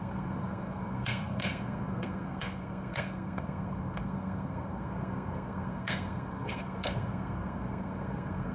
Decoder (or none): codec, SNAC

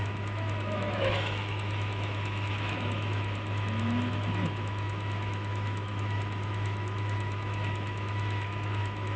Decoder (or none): autoencoder, DAC-VAE